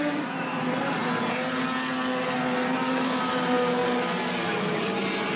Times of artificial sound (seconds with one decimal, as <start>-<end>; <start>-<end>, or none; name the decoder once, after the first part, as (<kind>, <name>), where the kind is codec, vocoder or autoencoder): none